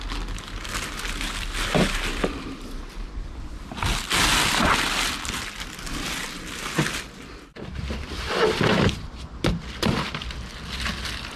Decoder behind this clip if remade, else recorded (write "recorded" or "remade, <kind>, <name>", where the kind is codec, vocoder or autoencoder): recorded